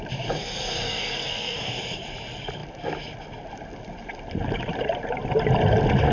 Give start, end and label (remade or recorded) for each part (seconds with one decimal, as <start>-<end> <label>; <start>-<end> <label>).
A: 0.0-0.4 recorded; 0.4-1.7 remade; 1.7-6.1 recorded